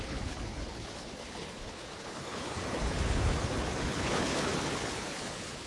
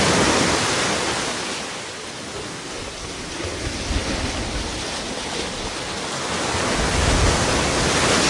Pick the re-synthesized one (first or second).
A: first